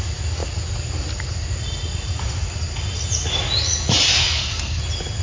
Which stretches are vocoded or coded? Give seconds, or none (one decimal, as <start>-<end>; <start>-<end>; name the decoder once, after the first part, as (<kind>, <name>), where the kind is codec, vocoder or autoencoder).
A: 4.2-4.8 (codec, SNAC)